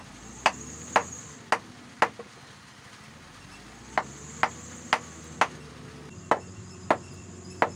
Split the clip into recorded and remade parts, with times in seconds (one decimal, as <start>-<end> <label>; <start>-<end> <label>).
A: 0.0-7.8 recorded